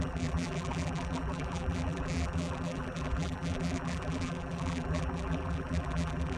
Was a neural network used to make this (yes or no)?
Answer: yes